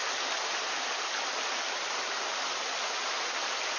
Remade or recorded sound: recorded